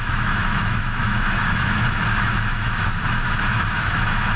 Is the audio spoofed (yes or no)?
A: yes